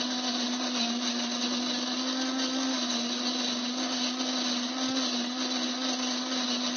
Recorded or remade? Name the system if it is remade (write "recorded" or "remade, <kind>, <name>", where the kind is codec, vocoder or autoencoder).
recorded